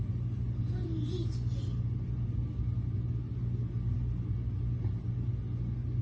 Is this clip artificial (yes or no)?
no